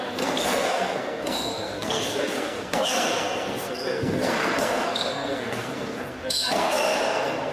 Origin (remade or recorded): remade